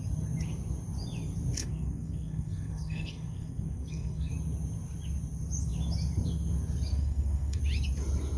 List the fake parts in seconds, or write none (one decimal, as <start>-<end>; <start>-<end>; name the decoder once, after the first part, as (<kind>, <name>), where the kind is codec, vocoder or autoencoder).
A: 1.6-4.3 (codec, SNAC); 6.9-7.6